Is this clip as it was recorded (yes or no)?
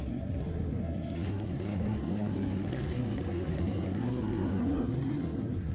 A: no